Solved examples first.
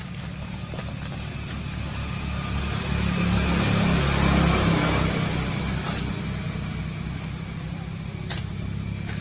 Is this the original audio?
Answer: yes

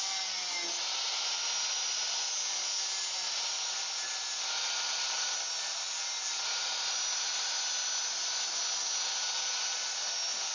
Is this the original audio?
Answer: yes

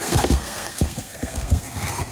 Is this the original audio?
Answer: no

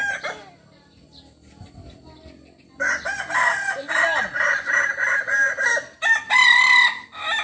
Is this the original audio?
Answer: yes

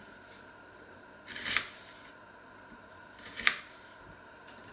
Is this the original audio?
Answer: no